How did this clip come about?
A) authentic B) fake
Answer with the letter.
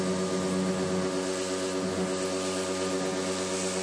A